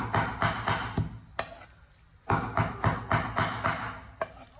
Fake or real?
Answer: real